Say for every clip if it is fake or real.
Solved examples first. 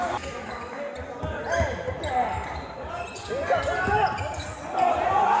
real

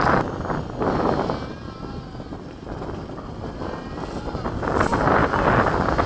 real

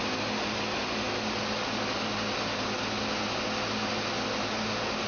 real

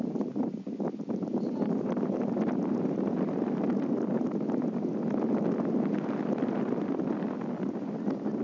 real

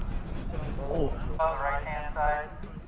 real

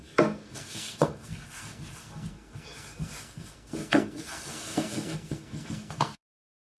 fake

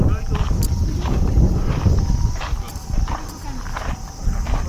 fake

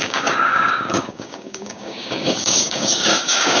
fake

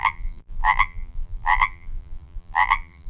fake